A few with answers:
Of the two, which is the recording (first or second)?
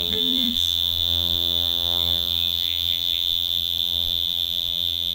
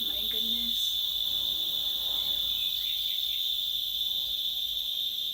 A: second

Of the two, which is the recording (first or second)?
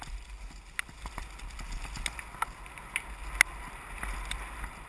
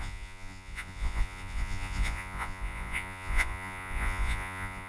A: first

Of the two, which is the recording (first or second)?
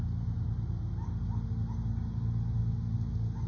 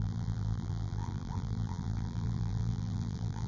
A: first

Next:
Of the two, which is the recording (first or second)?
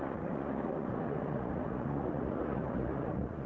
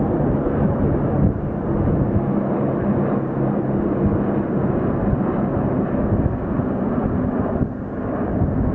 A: second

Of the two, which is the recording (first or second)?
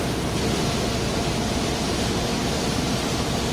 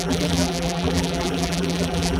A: first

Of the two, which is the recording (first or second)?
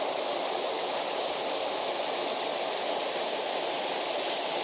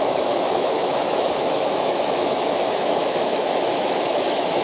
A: first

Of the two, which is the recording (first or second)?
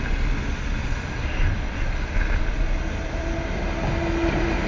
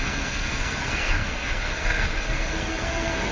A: first